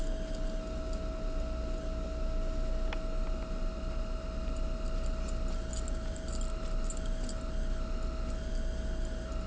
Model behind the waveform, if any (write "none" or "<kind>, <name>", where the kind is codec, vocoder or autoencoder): none